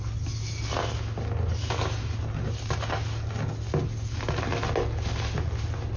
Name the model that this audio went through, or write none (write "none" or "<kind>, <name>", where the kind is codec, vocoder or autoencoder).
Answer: none